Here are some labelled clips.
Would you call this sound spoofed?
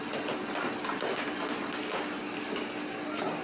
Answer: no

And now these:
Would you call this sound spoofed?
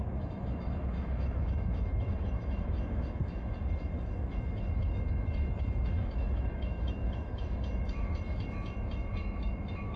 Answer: yes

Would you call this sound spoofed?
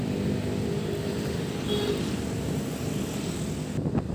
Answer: yes